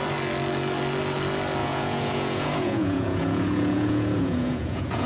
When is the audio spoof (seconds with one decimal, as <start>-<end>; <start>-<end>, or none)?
1.6-5.1